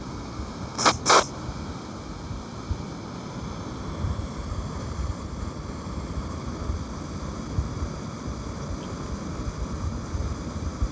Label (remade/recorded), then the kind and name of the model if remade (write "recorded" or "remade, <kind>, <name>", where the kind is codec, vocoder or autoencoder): recorded